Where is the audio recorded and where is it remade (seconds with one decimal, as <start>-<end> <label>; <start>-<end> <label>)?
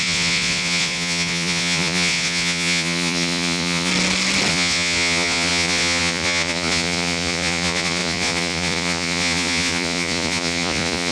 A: 0.0-3.9 remade; 3.9-4.5 recorded; 4.5-11.1 remade